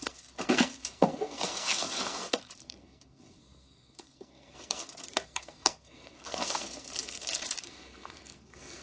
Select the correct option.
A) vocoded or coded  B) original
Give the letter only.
A